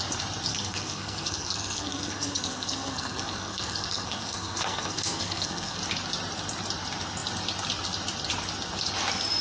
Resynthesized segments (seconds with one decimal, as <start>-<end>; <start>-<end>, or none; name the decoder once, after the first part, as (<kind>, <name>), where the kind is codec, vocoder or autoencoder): 0.5-5.8 (codec, SNAC)